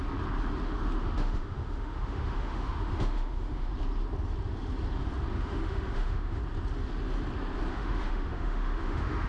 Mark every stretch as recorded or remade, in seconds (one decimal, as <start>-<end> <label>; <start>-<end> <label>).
0.0-1.0 recorded; 1.0-3.7 remade; 3.7-5.3 recorded; 5.3-6.4 remade; 6.4-7.7 recorded; 7.7-9.3 remade